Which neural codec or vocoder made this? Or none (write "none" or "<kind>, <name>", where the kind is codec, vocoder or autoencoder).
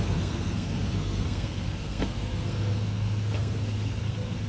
codec, SNAC